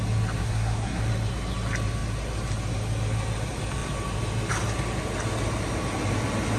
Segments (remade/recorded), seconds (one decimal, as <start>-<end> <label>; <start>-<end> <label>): 0.0-0.4 recorded; 0.4-1.0 remade; 1.0-6.6 recorded